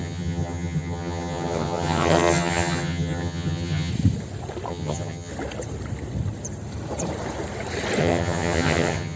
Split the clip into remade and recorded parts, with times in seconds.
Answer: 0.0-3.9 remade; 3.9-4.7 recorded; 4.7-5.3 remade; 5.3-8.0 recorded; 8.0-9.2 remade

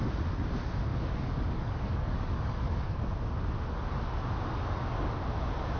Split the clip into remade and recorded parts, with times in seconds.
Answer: 0.0-0.9 recorded; 0.9-3.1 remade; 3.1-5.8 recorded

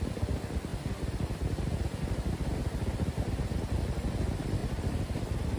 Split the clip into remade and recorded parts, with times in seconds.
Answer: 0.0-5.6 recorded

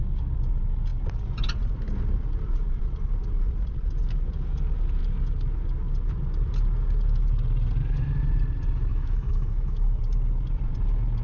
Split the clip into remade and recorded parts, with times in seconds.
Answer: 0.0-8.9 recorded; 8.9-10.0 remade; 10.0-11.2 recorded

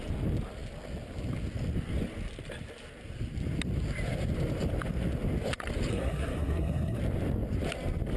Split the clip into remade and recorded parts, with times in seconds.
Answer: 0.0-5.9 recorded; 5.9-7.0 remade; 7.0-8.2 recorded

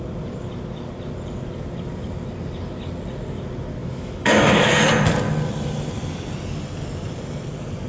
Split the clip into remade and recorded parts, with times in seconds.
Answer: 0.0-3.8 recorded; 3.8-4.7 remade; 4.7-7.9 recorded

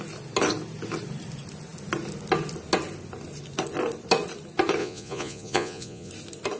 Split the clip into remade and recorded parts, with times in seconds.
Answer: 0.0-4.8 recorded; 4.8-6.1 remade; 6.1-6.6 recorded

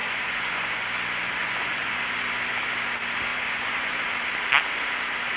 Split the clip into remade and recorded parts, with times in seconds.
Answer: 0.0-0.9 remade; 0.9-1.4 recorded; 1.4-2.0 remade; 2.0-3.3 recorded; 3.3-3.9 remade; 3.9-5.4 recorded